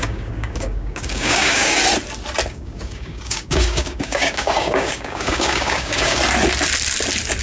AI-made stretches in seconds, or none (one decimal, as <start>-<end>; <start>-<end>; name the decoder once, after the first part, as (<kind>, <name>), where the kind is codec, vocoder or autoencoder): 0.0-1.8 (codec, DAC); 2.5-6.2